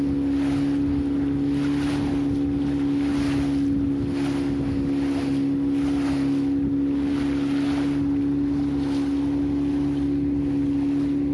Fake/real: real